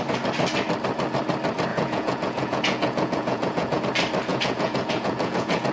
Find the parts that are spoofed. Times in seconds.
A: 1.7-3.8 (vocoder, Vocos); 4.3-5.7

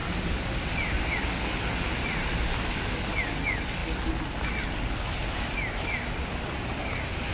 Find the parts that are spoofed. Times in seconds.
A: none

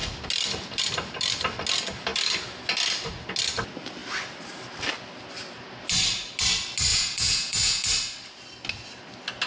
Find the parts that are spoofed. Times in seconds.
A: 6.9-7.9 (vocoder, Vocos)

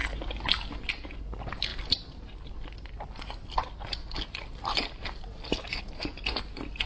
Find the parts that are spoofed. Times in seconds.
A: none

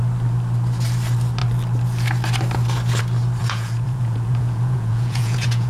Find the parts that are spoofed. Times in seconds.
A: 3.4-5.7 (vocoder, Vocos)

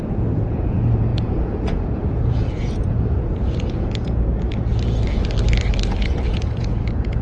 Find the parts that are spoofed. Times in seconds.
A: 0.0-4.3 (vocoder, Vocos); 6.0-7.2

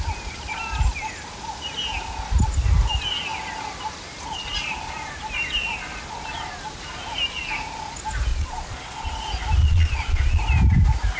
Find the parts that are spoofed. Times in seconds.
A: 8.3-9.1 (vocoder, Vocos); 9.6-10.4

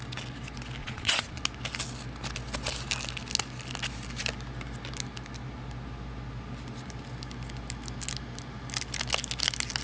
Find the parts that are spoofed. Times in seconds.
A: 0.8-1.4 (vocoder, Vocos)